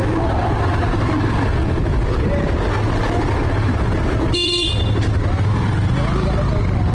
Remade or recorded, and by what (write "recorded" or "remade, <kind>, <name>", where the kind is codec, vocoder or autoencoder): recorded